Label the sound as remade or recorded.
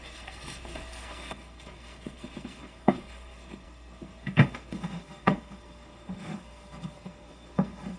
remade